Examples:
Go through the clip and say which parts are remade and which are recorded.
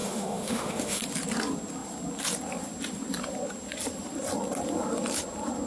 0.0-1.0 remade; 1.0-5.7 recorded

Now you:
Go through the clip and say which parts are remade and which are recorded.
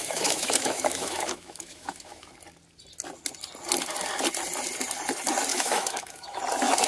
0.0-2.3 remade; 2.3-5.5 recorded; 5.5-6.4 remade; 6.4-6.9 recorded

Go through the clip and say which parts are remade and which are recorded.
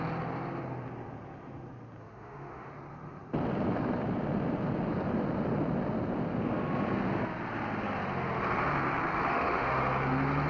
0.0-2.0 recorded; 2.0-2.7 remade; 2.7-9.3 recorded; 9.3-9.8 remade; 9.8-10.5 recorded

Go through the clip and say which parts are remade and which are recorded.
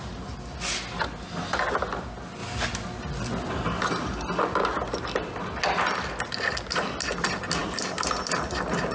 0.0-8.9 recorded